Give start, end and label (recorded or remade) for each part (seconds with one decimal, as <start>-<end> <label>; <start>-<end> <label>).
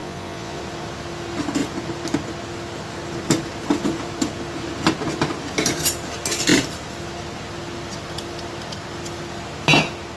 0.0-0.6 remade; 0.6-10.2 recorded